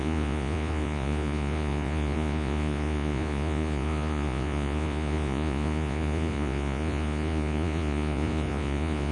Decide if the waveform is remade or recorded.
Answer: remade